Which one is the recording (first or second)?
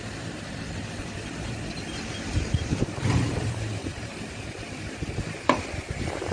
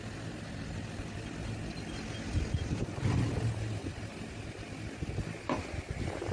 second